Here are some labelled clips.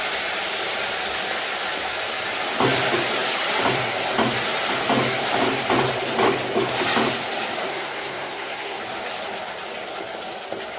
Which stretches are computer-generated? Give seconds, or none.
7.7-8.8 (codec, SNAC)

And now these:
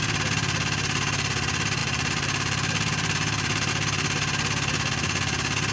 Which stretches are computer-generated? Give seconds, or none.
1.8-3.7 (vocoder, BigVGAN v2)

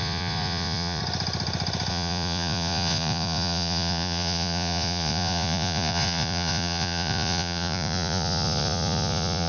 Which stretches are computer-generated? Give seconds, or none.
0.0-1.0 (vocoder, Vocos); 1.9-9.5

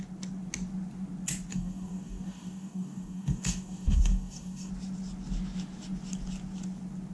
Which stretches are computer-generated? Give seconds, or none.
1.5-4.7 (codec, DAC)

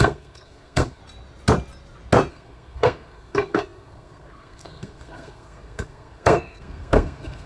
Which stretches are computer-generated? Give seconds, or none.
0.0-1.0 (codec, SNAC); 2.3-7.5